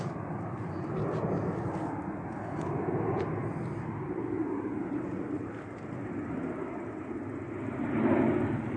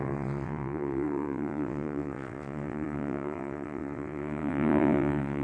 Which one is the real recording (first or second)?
first